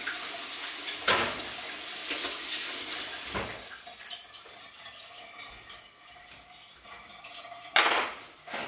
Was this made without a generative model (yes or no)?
yes